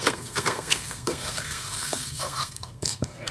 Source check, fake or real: fake